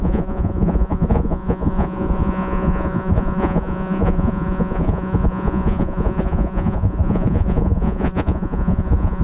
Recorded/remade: remade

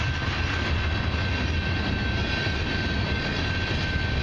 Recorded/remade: recorded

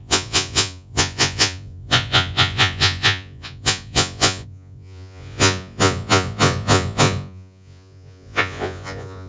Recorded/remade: remade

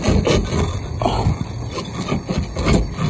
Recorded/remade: recorded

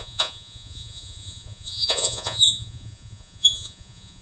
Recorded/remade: remade